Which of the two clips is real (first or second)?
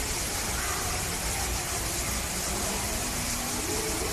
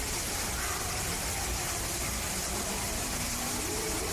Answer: first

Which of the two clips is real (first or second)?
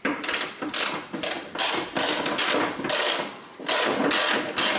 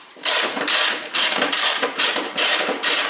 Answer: first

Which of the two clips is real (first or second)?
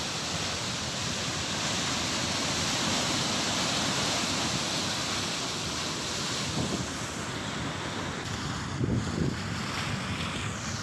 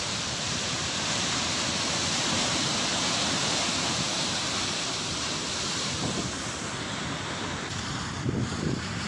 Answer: first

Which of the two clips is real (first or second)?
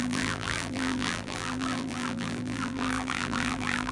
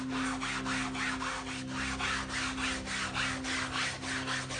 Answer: second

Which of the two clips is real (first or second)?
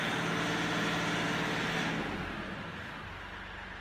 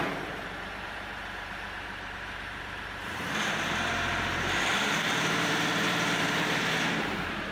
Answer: first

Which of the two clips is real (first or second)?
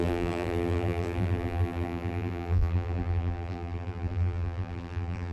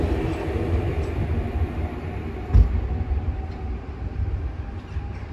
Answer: second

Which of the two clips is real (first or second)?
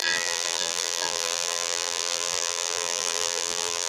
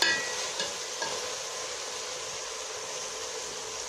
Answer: second